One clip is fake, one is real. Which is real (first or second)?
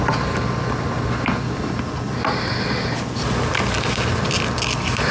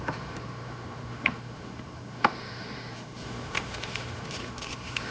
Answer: first